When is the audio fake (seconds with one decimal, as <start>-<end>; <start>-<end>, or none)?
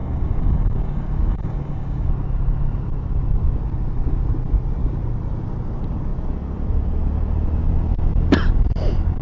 0.0-2.1